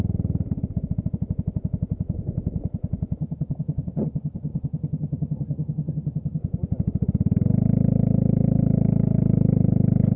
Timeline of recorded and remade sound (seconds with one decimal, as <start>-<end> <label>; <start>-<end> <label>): 0.0-3.2 recorded; 3.2-6.4 remade; 6.4-10.2 recorded